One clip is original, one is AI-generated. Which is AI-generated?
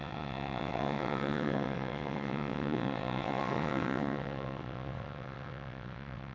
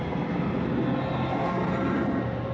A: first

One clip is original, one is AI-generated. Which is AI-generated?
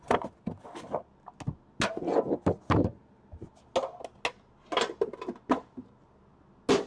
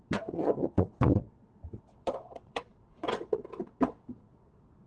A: second